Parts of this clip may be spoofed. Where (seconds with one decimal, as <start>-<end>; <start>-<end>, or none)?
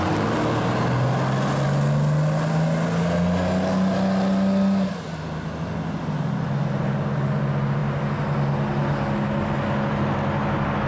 none